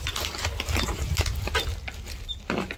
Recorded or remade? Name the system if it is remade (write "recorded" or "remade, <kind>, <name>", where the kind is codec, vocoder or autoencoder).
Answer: recorded